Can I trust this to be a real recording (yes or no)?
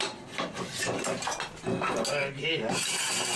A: yes